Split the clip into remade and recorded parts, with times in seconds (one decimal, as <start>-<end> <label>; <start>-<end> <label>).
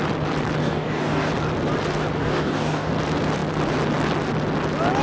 0.0-0.6 recorded; 0.6-1.3 remade; 1.3-2.2 recorded; 2.2-2.9 remade; 2.9-5.0 recorded